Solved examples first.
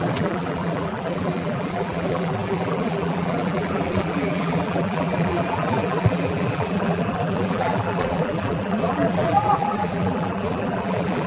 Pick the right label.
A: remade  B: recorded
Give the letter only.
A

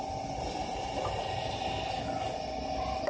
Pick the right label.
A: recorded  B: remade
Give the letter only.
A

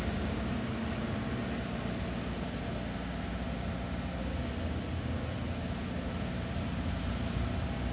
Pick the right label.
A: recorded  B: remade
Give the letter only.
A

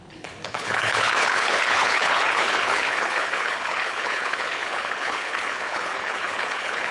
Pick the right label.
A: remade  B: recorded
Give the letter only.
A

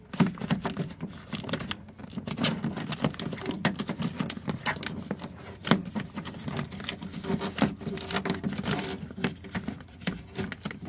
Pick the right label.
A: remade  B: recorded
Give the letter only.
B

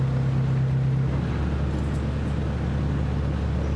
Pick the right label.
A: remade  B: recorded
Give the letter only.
B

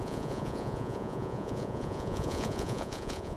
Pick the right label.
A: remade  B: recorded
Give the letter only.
A